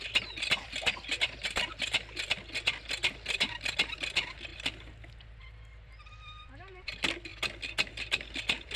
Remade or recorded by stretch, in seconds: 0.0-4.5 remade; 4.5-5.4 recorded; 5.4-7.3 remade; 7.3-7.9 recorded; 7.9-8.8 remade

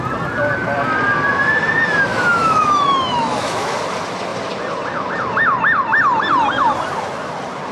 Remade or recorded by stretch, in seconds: 0.0-2.1 recorded; 2.1-3.8 remade; 3.8-7.7 recorded

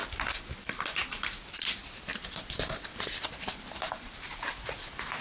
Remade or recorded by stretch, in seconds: 0.0-0.6 recorded; 0.6-5.2 remade